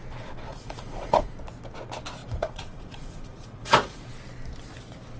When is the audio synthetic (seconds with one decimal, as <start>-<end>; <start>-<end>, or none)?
0.5-1.3; 2.2-4.1